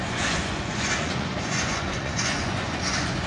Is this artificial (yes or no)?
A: yes